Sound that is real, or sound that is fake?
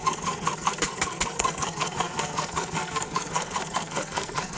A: fake